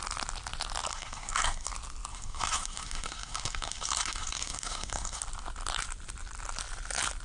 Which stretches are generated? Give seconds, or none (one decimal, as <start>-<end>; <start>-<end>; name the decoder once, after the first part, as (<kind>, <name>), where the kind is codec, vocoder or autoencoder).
0.9-1.7 (codec, SNAC); 2.1-5.2